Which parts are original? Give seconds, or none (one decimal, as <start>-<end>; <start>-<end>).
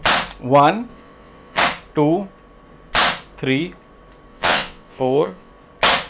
0.0-0.9; 1.6-4.3; 5.5-6.1